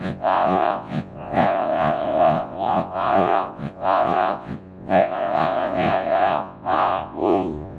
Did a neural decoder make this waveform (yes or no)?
yes